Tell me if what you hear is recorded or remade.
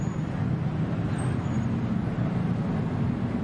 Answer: recorded